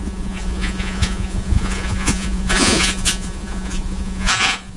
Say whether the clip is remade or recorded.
remade